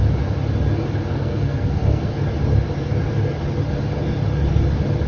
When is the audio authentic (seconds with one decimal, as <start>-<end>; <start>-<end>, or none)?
0.0-1.1; 2.1-5.1